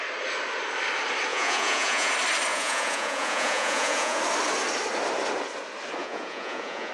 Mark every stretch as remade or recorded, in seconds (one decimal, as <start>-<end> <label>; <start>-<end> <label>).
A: 0.0-1.3 recorded; 1.3-2.1 remade; 2.1-2.5 recorded; 2.5-4.2 remade; 4.2-6.0 recorded; 6.0-6.9 remade